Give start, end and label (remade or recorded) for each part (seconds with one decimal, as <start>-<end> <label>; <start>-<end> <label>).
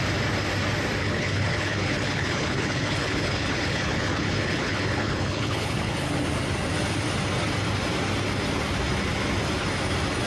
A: 0.0-1.0 recorded; 1.0-6.1 remade; 6.1-10.3 recorded